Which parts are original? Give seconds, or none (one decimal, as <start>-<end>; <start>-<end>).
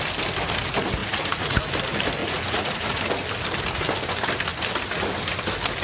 0.0-1.0; 1.6-2.2; 3.0-5.8